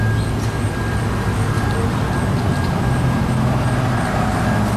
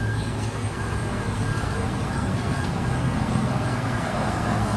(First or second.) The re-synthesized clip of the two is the second